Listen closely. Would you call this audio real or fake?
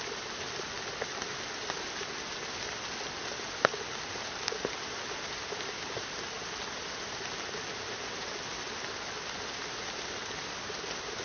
real